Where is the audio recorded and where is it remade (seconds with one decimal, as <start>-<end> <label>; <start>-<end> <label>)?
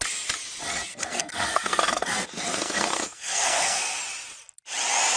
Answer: 0.0-0.9 recorded; 0.9-4.0 remade; 4.0-5.2 recorded